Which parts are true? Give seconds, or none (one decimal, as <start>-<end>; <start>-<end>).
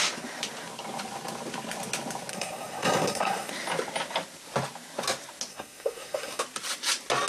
0.0-2.3; 3.5-5.5; 6.4-7.3